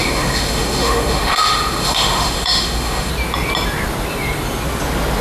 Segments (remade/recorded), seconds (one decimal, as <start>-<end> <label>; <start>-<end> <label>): 0.0-3.1 remade; 3.1-5.2 recorded